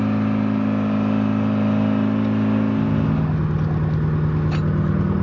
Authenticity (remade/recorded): recorded